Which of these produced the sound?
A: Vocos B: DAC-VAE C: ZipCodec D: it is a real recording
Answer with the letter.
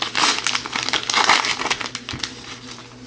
D